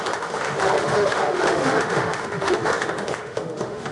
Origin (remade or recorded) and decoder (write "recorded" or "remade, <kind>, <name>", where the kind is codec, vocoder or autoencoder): remade, autoencoder, DAC-VAE